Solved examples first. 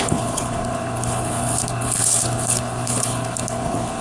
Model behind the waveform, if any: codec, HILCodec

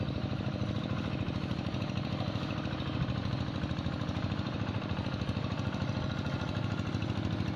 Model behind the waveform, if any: vocoder, BigVGAN v2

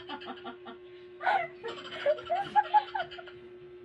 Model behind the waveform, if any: none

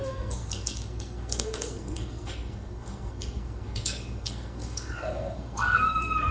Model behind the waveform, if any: codec, SNAC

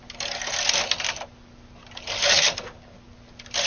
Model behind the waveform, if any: none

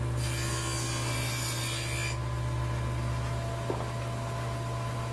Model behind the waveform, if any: none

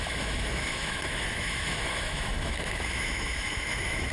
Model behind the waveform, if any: autoencoder, DAC-VAE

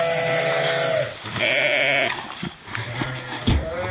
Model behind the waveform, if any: none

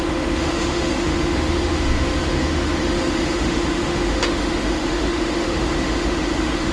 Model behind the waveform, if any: autoencoder, DAC-VAE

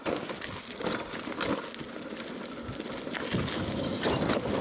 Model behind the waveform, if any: none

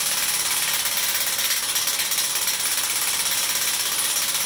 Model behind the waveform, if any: none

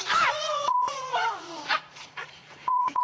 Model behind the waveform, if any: vocoder, Vocos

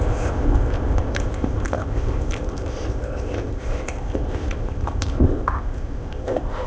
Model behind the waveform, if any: codec, ZipCodec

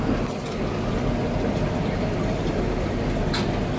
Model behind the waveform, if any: none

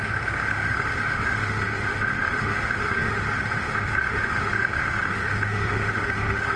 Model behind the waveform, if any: autoencoder, DAC-VAE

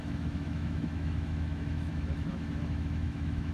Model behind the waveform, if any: autoencoder, DAC-VAE